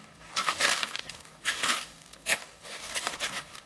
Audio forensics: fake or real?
fake